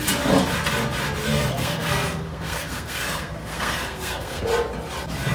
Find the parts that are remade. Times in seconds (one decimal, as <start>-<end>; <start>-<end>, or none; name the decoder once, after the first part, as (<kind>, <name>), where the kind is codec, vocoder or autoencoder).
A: 1.2-4.4 (codec, SNAC)